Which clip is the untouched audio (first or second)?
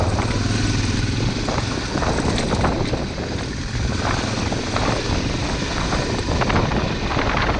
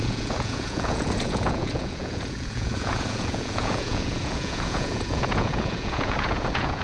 first